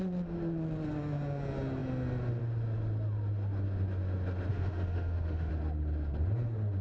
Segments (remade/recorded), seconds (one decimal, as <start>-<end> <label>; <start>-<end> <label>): 0.0-4.5 recorded; 4.5-5.5 remade; 5.5-6.8 recorded